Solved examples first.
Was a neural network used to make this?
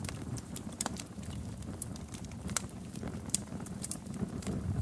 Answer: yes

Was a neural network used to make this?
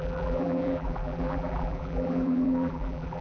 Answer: yes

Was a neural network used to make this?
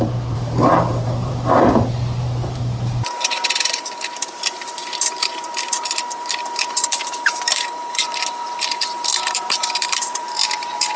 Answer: yes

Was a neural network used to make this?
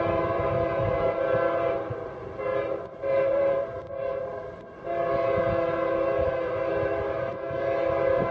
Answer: yes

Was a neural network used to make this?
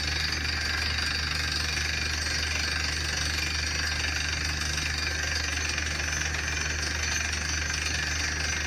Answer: no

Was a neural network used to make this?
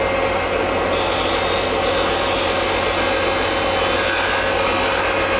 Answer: no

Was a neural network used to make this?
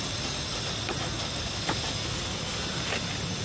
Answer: no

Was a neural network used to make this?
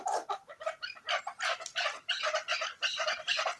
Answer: no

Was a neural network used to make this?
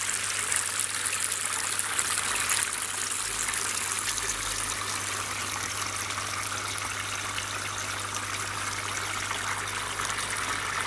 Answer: no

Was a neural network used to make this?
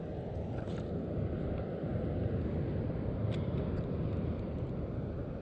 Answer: no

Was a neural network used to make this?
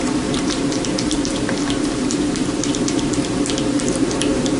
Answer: yes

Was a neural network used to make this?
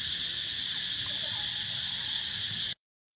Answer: yes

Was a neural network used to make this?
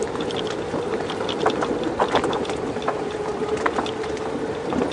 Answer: no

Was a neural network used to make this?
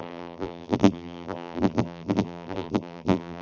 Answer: yes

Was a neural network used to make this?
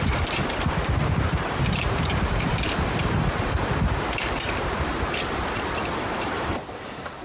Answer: yes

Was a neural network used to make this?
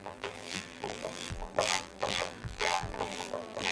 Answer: yes